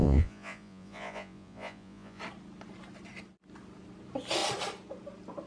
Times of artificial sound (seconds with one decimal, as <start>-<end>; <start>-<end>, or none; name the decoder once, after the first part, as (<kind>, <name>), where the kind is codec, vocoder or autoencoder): 0.0-2.2 (vocoder, Vocos)